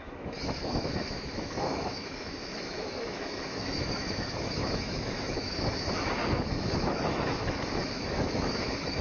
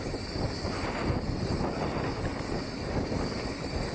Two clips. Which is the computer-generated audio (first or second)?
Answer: first